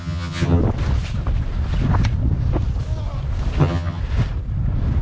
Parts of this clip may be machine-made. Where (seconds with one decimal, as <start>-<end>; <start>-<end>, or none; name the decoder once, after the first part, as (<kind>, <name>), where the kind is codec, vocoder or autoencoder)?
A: 0.0-0.6 (vocoder, HiFi-GAN); 3.6-4.0

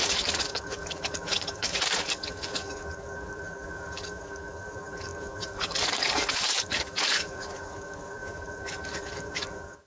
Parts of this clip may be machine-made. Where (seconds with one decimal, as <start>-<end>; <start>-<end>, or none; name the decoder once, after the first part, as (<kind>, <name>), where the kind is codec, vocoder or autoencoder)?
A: 0.0-9.9 (codec, DAC)

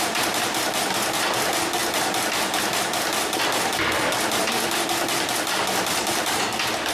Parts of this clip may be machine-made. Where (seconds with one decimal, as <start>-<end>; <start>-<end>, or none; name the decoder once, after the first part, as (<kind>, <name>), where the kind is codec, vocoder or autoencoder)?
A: 0.0-1.8 (vocoder, BigVGAN v2); 5.3-6.9